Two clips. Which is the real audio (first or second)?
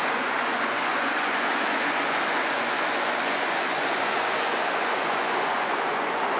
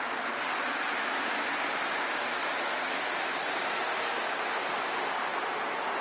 second